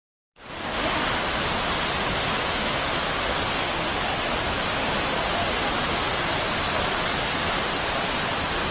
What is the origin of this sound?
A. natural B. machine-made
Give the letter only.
A